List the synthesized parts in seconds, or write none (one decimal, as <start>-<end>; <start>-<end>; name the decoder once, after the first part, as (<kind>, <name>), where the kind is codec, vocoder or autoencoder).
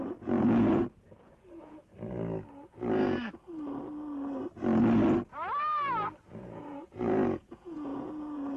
0.0-1.9 (vocoder, Vocos); 6.3-8.6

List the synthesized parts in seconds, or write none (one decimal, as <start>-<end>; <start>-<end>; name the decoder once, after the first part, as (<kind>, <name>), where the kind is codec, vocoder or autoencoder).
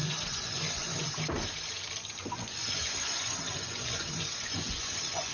0.0-1.1 (vocoder, Vocos); 2.2-5.3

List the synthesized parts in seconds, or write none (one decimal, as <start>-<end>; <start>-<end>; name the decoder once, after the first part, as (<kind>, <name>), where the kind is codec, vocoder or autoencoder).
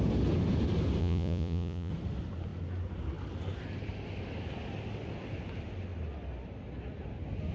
1.0-1.9 (vocoder, Vocos)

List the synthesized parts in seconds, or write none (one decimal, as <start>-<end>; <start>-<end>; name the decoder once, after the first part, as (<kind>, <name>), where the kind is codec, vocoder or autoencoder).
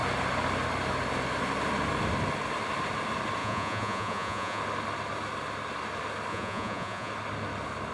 3.4-4.6 (vocoder, Vocos); 6.3-7.1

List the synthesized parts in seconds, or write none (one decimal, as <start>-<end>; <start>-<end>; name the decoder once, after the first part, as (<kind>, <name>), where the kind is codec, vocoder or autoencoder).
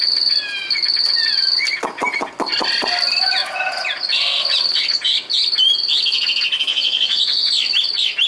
6.7-7.5 (vocoder, Vocos)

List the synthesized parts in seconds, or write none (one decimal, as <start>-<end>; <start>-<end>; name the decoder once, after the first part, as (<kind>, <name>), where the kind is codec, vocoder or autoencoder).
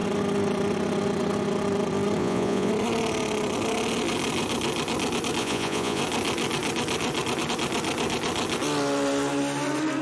2.2-2.7 (vocoder, Vocos); 5.4-6.0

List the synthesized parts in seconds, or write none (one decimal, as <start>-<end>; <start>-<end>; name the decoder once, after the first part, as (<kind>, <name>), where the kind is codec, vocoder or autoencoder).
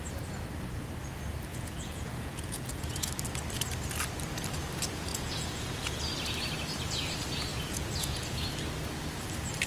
1.5-3.1 (vocoder, Vocos); 5.1-6.0; 7.5-8.5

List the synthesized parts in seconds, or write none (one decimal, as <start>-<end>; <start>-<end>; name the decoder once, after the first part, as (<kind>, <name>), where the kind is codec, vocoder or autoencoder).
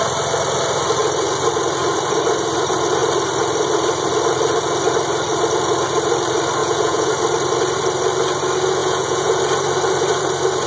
6.6-7.1 (vocoder, Vocos); 8.8-9.4